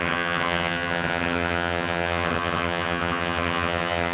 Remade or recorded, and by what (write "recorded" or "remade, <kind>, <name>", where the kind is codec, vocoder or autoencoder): remade, vocoder, HiFi-GAN